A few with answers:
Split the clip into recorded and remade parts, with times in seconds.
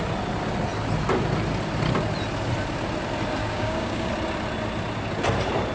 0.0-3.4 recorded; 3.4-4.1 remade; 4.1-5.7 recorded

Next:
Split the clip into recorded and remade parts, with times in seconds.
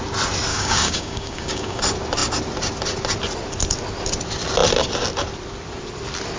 0.0-0.5 recorded; 0.5-1.8 remade; 1.8-6.4 recorded